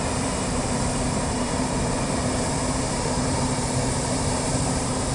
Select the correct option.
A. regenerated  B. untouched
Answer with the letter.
A